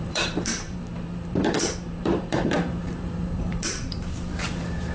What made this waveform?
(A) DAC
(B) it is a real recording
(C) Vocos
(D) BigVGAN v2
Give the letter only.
D